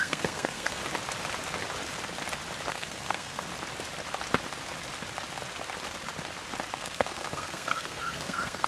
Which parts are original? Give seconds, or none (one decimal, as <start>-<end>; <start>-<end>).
0.8-2.7; 3.5-6.7